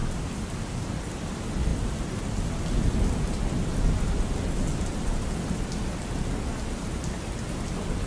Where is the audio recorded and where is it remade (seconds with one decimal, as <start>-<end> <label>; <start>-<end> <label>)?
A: 0.0-1.0 remade; 1.0-1.7 recorded; 1.7-2.6 remade; 2.6-8.1 recorded